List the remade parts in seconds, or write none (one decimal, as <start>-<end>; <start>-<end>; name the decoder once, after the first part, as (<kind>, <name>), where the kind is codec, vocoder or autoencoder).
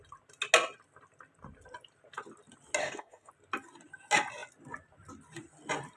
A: 2.8-3.3 (codec, DAC)